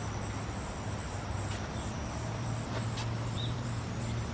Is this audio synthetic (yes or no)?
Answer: yes